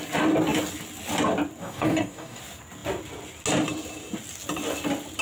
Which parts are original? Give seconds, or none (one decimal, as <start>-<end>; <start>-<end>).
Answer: 0.0-1.6; 2.4-5.2

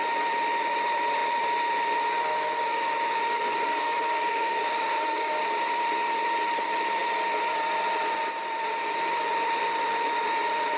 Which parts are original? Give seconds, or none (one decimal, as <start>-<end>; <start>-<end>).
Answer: 0.0-2.7; 5.3-10.8

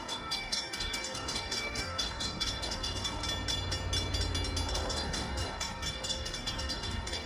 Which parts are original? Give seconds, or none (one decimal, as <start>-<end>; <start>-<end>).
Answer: 3.2-4.7

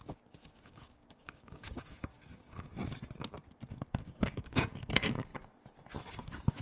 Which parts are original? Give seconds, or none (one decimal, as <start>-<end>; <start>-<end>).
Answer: 0.0-0.6; 2.8-3.7; 5.3-6.0